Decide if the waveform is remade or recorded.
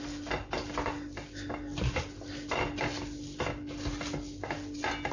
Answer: recorded